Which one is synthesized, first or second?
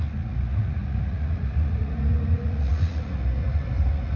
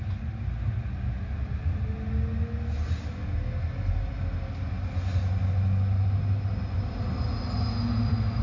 first